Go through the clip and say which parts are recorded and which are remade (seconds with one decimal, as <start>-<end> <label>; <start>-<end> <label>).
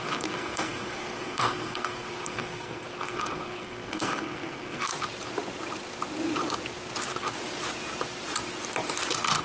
0.0-4.9 remade; 4.9-9.4 recorded